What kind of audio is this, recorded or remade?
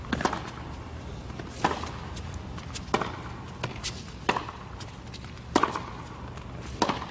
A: recorded